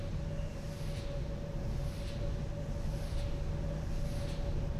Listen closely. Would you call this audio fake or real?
real